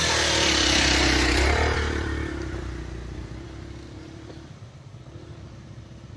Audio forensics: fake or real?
fake